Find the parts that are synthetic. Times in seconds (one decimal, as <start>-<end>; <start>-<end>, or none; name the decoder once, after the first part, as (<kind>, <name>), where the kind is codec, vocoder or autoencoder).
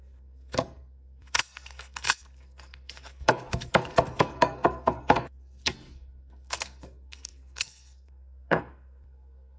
0.0-9.6 (codec, SNAC)